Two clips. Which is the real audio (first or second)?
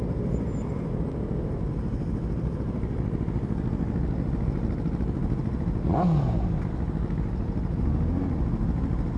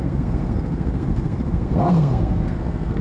first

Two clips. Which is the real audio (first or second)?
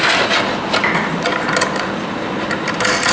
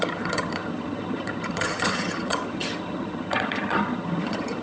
first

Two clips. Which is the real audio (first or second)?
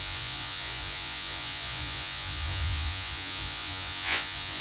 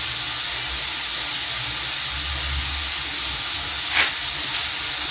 second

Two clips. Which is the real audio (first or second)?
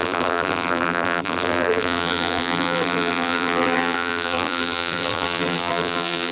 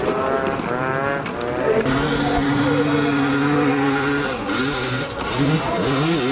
second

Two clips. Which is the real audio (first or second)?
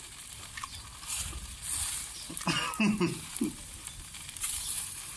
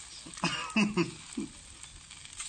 second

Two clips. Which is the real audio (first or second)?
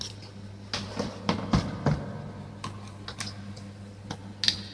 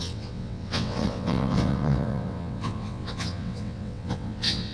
first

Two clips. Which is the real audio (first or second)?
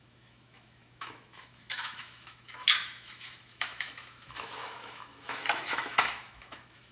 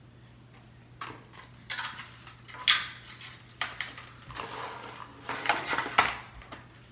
second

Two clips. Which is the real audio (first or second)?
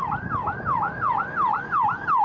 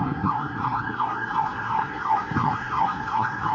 first